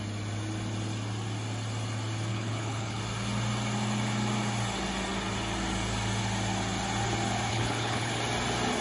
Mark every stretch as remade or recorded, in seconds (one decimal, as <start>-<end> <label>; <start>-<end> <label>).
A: 0.0-2.3 recorded; 2.3-3.0 remade; 3.0-7.5 recorded; 7.5-8.1 remade; 8.1-8.8 recorded